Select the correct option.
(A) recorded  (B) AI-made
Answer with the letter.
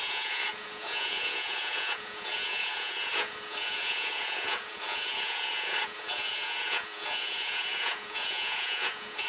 B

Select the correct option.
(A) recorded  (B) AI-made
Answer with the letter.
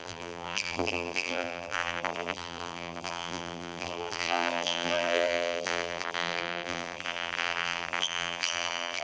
B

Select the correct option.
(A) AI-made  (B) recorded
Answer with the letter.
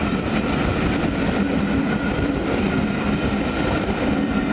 B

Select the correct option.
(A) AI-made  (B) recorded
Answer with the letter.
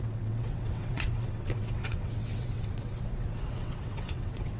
A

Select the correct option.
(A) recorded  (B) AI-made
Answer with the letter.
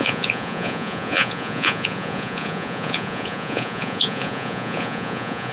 B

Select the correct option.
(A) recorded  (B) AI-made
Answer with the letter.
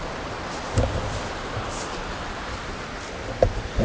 A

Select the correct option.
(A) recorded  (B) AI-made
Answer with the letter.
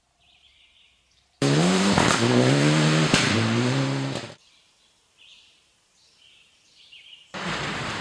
B